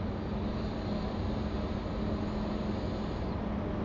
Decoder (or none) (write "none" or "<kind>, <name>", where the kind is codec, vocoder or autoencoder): none